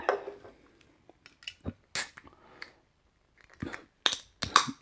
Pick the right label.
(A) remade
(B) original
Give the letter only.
B